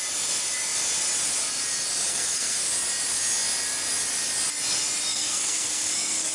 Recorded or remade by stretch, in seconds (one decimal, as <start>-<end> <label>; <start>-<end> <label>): 0.0-2.1 recorded; 2.1-2.7 remade; 2.7-5.1 recorded; 5.1-6.3 remade